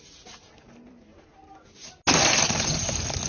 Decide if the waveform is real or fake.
real